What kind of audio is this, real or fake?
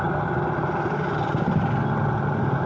real